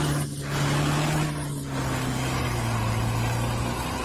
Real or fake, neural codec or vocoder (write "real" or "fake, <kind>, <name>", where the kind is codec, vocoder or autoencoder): real